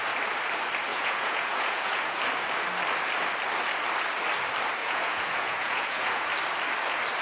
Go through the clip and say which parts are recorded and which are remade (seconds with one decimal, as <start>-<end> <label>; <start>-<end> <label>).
0.0-0.9 recorded; 0.9-2.2 remade; 2.2-4.8 recorded; 4.8-6.3 remade; 6.3-7.2 recorded